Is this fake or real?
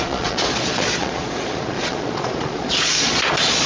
fake